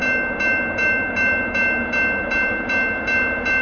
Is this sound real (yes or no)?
yes